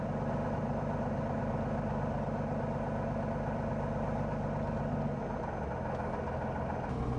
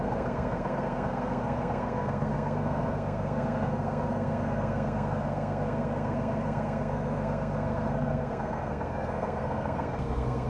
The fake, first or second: second